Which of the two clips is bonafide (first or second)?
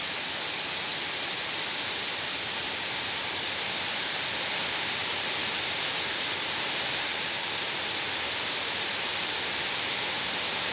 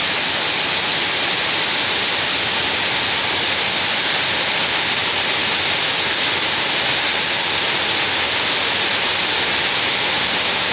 second